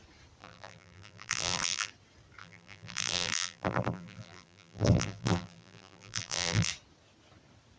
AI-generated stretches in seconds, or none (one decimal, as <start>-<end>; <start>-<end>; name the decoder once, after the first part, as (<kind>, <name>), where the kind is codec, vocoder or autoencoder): 0.4-1.9 (vocoder, BigVGAN v2); 2.4-6.7